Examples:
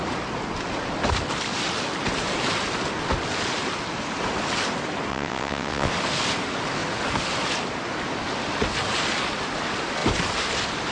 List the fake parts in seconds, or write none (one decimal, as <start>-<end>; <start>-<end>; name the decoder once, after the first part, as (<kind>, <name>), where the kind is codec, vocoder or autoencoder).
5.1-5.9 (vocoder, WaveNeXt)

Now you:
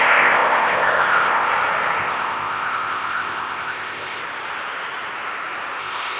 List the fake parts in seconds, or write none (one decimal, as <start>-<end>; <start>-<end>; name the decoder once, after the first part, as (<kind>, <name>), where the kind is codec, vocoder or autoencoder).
0.0-1.5 (codec, ZipCodec); 2.0-4.2; 5.8-6.2

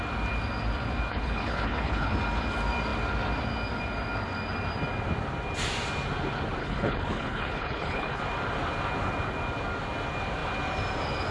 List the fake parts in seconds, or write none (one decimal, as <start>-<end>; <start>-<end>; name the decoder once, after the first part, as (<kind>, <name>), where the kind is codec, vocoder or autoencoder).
1.1-2.1 (codec, HILCodec); 6.6-8.2